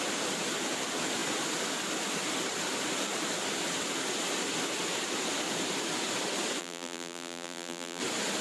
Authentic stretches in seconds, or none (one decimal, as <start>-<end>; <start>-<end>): 0.0-6.6; 8.0-8.4